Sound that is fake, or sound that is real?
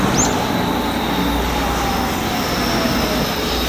real